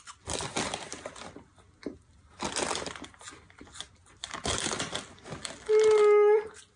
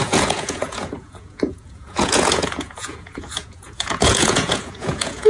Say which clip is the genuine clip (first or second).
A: first